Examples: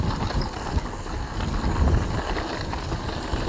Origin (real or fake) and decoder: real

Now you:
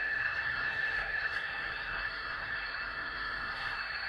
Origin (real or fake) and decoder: fake, codec, SNAC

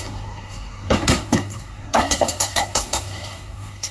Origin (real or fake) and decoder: fake, codec, SNAC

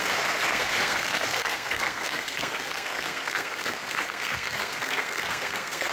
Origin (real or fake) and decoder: fake, codec, SNAC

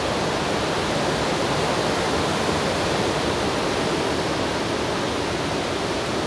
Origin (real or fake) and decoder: real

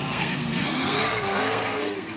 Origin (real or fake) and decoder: fake, codec, SNAC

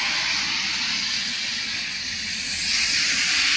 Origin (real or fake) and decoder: real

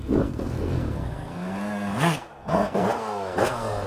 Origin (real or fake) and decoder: fake, codec, SNAC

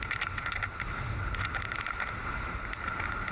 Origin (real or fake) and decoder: real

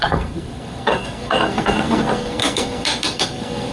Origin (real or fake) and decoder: fake, codec, SNAC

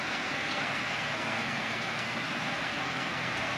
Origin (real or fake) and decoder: fake, codec, SNAC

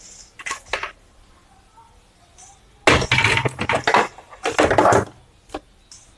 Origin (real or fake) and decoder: real